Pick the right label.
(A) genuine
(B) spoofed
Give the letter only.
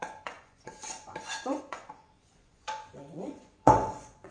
B